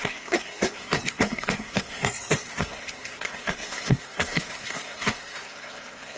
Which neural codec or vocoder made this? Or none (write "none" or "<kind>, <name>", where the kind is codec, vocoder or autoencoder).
codec, SNAC